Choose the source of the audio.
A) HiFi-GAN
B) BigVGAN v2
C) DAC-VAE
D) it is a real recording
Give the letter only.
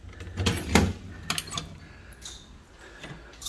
D